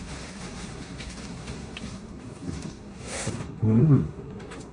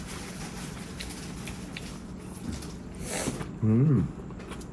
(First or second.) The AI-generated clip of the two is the first